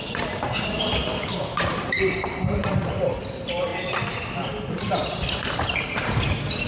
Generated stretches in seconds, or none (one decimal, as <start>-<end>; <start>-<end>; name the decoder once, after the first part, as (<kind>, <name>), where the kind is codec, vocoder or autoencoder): 0.0-3.7 (vocoder, BigVGAN v2); 4.6-6.7